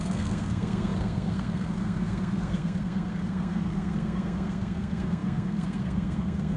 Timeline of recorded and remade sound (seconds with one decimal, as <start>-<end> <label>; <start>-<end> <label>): 0.0-6.6 remade